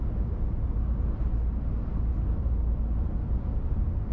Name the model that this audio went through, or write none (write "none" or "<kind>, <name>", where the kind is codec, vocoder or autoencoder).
none